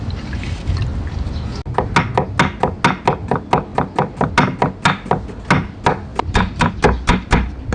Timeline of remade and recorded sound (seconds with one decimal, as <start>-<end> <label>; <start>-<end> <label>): 0.0-3.7 recorded; 3.7-4.3 remade; 4.3-6.1 recorded; 6.1-6.7 remade; 6.7-7.7 recorded